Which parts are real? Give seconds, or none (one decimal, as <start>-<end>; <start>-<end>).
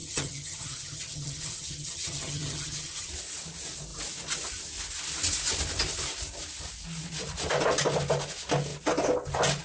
3.1-9.6